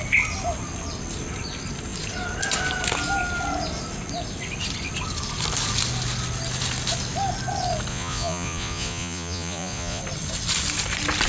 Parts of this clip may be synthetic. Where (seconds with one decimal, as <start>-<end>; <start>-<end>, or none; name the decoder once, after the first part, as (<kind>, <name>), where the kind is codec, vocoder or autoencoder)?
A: 7.9-10.0 (vocoder, Vocos)